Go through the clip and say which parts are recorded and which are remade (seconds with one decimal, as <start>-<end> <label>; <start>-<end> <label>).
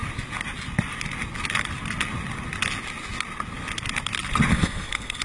0.0-4.5 recorded; 4.5-5.2 remade